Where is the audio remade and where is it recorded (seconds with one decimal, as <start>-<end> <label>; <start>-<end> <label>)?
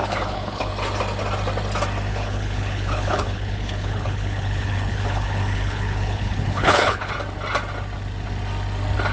0.0-0.7 remade; 0.7-2.1 recorded; 2.1-7.1 remade; 7.1-9.1 recorded